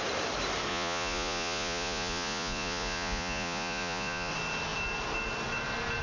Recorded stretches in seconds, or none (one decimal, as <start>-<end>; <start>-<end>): 0.0-0.7; 4.3-6.0